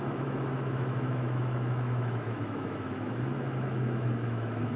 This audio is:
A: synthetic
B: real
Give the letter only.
A